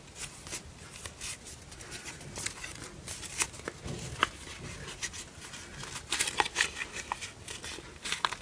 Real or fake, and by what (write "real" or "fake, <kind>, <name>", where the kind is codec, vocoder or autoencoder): real